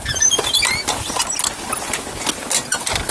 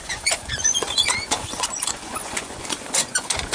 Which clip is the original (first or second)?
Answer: first